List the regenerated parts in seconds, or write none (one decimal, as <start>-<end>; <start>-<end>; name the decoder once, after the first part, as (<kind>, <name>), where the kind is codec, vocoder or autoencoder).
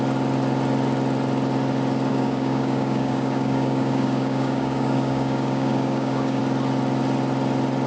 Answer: 2.1-6.4 (codec, DAC)